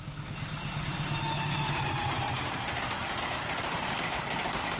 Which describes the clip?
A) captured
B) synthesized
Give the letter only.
A